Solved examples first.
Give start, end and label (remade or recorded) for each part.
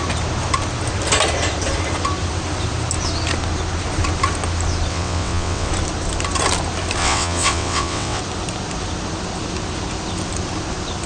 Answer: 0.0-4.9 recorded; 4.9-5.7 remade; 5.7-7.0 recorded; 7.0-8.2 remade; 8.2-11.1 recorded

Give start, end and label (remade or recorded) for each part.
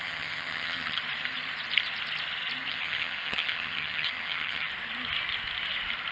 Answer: 0.0-1.0 remade; 1.0-2.7 recorded; 2.7-4.7 remade; 4.7-6.1 recorded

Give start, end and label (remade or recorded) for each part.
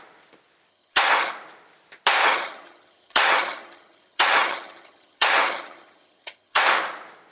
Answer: 0.0-0.7 recorded; 0.7-1.3 remade; 1.3-2.2 recorded; 2.2-6.6 remade; 6.6-7.3 recorded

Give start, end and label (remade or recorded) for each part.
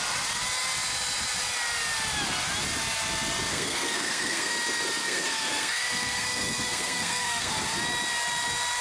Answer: 0.0-3.5 recorded; 3.5-4.5 remade; 4.5-5.0 recorded; 5.0-7.5 remade; 7.5-8.8 recorded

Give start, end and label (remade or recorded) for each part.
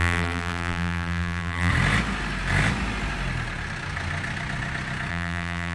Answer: 0.0-1.7 remade; 1.7-5.1 recorded; 5.1-5.7 remade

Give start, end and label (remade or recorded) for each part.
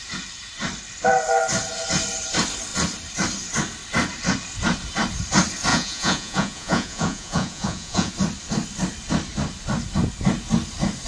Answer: 0.0-5.7 recorded; 5.7-8.1 remade; 8.1-11.1 recorded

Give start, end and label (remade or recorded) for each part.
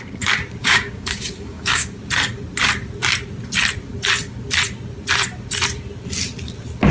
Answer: 0.0-0.6 recorded; 0.6-2.0 remade; 2.0-6.9 recorded